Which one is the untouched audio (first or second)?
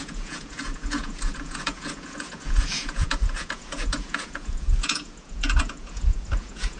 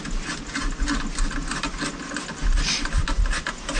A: second